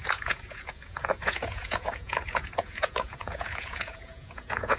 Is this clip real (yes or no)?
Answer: no